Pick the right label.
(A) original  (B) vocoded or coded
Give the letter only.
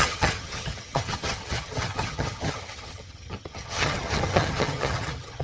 B